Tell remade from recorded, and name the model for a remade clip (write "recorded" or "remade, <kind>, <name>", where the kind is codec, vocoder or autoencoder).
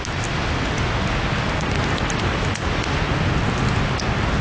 recorded